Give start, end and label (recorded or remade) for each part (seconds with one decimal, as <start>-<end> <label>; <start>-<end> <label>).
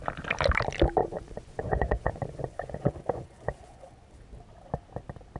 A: 0.0-1.0 recorded; 1.0-4.2 remade; 4.2-5.4 recorded